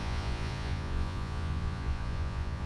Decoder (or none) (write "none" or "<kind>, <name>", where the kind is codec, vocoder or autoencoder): vocoder, Vocos